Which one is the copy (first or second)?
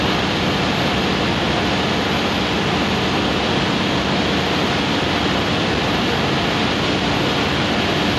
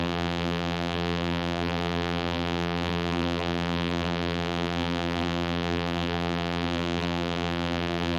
second